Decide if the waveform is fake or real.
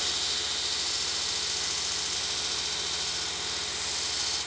real